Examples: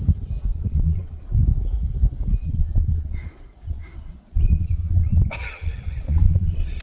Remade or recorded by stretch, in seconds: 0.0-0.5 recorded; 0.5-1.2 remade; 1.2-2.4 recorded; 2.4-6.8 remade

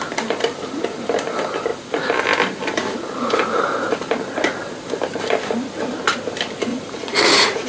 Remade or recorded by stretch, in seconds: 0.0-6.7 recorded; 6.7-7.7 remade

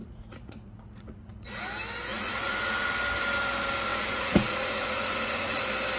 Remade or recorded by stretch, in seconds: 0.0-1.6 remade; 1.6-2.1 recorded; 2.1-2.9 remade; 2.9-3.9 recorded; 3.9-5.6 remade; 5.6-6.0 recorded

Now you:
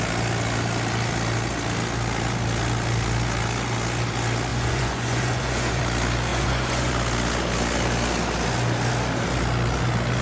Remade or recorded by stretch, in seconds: 0.0-4.5 recorded; 4.5-5.8 remade; 5.8-6.3 recorded; 6.3-6.9 remade; 6.9-10.2 recorded

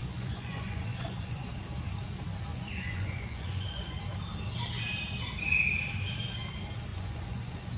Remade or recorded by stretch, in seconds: 0.0-1.5 remade; 1.5-2.5 recorded; 2.5-4.0 remade; 4.0-6.9 recorded; 6.9-7.8 remade

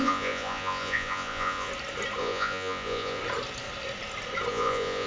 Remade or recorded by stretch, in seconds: 0.0-1.7 remade; 1.7-2.2 recorded; 2.2-3.2 remade; 3.2-4.5 recorded; 4.5-5.1 remade